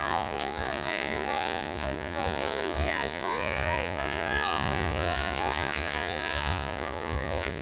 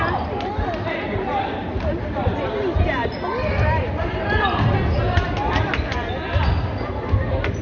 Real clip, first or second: second